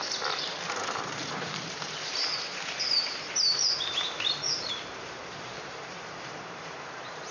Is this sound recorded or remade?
remade